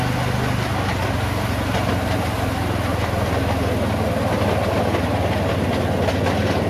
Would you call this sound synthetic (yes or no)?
no